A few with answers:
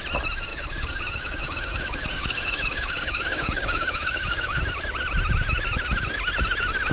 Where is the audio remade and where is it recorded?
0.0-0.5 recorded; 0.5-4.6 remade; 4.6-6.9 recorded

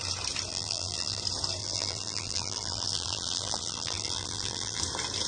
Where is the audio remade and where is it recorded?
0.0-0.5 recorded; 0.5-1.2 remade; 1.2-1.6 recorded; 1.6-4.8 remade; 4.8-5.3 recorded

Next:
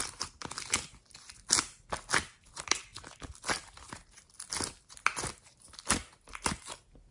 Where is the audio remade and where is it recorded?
0.0-7.1 recorded

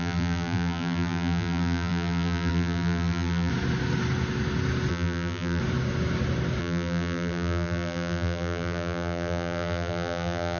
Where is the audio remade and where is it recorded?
0.0-3.5 remade; 3.5-4.9 recorded; 4.9-5.6 remade; 5.6-6.6 recorded; 6.6-10.6 remade